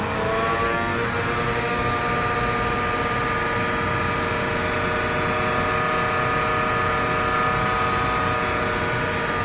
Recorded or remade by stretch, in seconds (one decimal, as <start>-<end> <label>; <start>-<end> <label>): 0.0-0.9 recorded; 0.9-2.0 remade; 2.0-9.4 recorded